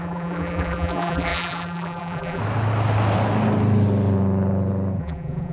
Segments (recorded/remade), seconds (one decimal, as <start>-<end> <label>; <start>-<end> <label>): 0.0-2.4 remade; 2.4-5.0 recorded; 5.0-5.5 remade